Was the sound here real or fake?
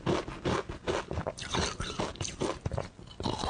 real